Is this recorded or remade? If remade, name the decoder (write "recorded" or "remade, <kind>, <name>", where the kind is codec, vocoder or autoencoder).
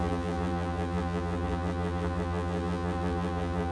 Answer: remade, vocoder, BigVGAN v2